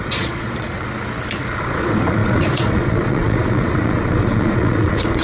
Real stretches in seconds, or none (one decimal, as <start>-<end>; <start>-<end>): 0.9-1.6